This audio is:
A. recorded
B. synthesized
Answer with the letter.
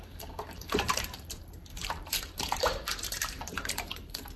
B